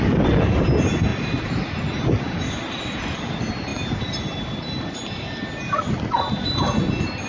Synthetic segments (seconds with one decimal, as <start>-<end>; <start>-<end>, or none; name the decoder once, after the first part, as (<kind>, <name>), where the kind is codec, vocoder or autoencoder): none